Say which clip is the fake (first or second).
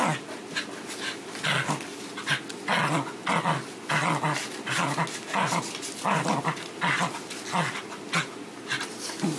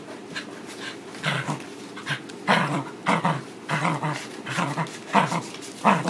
second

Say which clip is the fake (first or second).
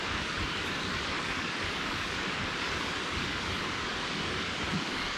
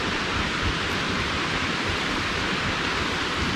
first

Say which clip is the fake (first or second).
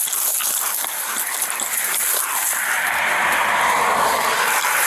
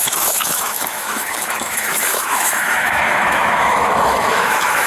second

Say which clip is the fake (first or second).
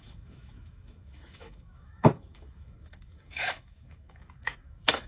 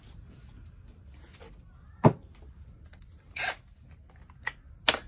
first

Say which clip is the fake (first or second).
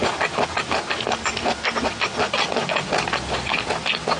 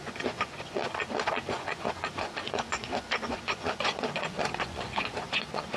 second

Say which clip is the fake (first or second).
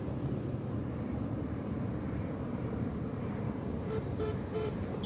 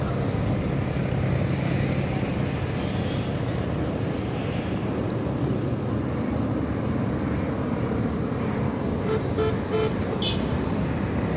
first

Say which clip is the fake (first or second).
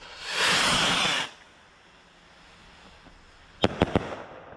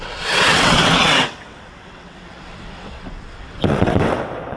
second